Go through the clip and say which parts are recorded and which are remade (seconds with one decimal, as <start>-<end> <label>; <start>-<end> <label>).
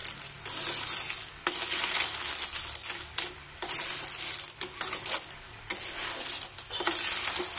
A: 0.0-7.6 recorded